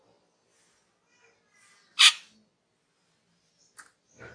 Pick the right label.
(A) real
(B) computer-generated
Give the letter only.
A